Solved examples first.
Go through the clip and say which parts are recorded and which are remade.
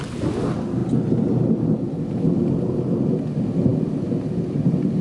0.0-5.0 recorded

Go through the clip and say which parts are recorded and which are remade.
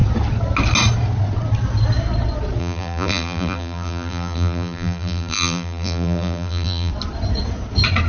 0.0-2.6 recorded; 2.6-6.9 remade; 6.9-8.1 recorded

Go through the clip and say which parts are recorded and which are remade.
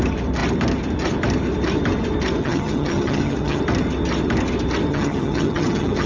0.0-2.4 recorded; 2.4-3.6 remade; 3.6-4.9 recorded; 4.9-6.1 remade